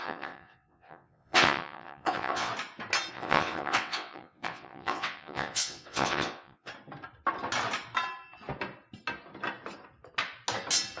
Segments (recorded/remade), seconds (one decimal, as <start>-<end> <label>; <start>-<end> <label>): 0.0-2.5 remade; 2.5-3.1 recorded; 3.1-6.7 remade; 6.7-11.0 recorded